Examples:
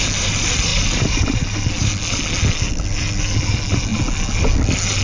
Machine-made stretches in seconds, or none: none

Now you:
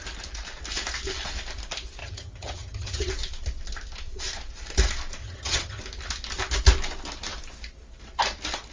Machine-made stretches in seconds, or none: 2.0-3.1 (vocoder, HiFi-GAN); 5.2-5.8